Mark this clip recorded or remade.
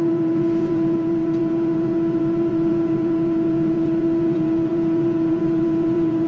remade